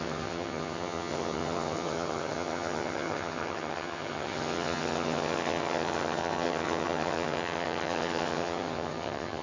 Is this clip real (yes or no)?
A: no